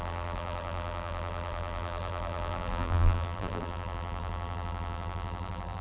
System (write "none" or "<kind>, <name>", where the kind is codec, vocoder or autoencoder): vocoder, BigVGAN v2